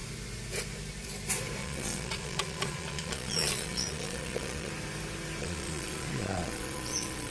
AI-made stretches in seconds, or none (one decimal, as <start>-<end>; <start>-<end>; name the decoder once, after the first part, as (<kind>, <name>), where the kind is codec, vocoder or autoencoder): 1.6-4.7 (vocoder, Vocos); 5.4-7.3

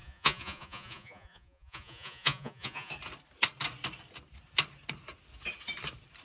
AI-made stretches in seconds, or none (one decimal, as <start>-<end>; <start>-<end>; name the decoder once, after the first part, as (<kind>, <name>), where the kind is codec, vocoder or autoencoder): 0.0-2.9 (vocoder, Vocos)

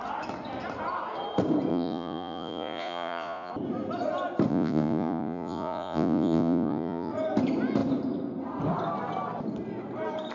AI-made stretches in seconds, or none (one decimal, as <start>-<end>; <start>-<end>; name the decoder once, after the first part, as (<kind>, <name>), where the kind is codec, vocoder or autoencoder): 1.7-3.5 (vocoder, Vocos); 4.5-7.1

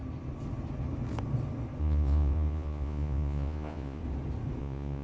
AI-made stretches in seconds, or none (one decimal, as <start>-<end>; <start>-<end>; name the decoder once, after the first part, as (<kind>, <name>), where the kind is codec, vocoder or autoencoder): 1.8-4.0 (vocoder, Vocos); 4.6-5.0

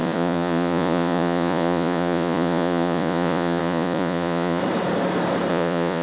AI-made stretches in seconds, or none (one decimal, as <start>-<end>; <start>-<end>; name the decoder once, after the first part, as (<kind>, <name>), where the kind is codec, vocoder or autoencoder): 0.0-4.6 (vocoder, Vocos); 5.5-6.0

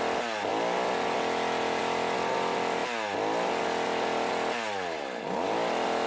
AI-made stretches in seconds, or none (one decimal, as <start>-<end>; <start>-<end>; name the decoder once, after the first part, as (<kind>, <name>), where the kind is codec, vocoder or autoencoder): none

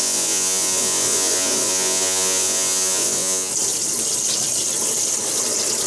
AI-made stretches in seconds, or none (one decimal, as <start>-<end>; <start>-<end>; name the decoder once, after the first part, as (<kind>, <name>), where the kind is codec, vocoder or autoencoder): 0.0-3.5 (vocoder, Vocos)

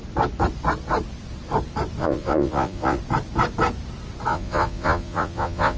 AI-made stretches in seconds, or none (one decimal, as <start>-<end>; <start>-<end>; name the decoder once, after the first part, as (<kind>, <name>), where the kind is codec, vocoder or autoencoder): 2.0-3.0 (vocoder, Vocos); 4.3-5.8